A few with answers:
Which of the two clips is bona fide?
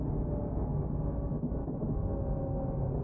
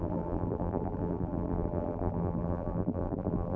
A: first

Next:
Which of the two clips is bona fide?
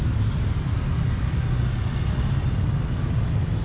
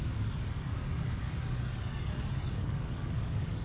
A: first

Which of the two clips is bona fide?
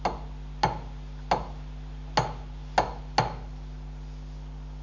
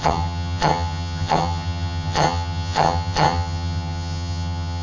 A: first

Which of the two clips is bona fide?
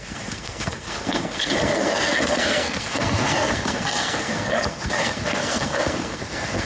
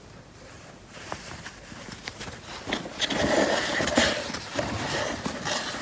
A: second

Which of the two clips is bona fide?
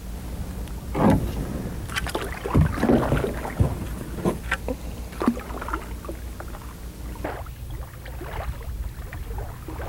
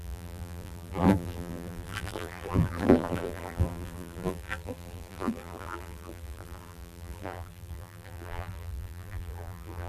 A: first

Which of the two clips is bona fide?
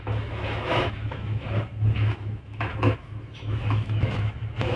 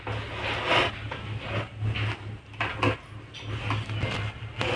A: second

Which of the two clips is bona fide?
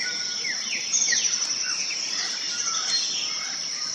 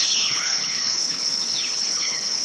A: first